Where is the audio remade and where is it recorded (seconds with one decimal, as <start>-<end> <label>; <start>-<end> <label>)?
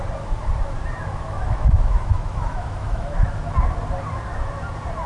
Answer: 0.0-1.0 recorded; 1.0-3.5 remade; 3.5-5.1 recorded